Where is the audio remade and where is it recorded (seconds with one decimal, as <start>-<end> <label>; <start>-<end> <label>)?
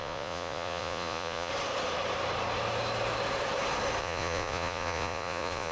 0.0-1.5 remade; 1.5-4.0 recorded; 4.0-5.7 remade